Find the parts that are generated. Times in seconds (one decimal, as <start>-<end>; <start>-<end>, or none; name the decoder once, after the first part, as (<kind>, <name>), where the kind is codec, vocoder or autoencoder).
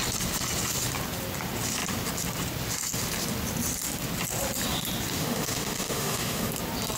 5.2-6.5 (autoencoder, DAC-VAE)